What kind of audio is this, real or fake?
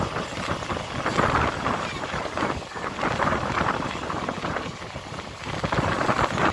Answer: real